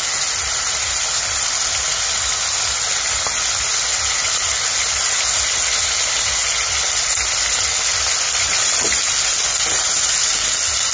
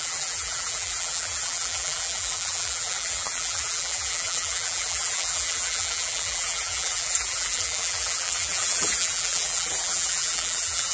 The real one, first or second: first